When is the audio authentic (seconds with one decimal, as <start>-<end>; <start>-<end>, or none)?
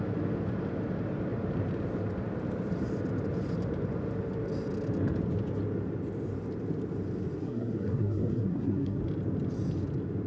0.0-7.4; 9.0-10.3